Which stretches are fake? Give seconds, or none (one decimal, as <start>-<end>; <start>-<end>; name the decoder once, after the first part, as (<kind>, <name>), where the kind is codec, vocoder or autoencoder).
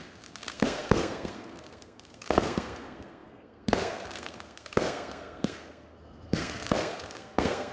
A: 0.0-7.7 (codec, SNAC)